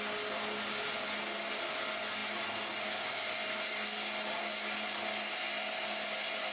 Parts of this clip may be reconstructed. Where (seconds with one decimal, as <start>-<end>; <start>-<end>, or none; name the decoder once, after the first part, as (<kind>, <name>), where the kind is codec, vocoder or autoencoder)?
none